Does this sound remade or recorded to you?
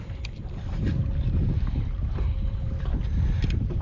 recorded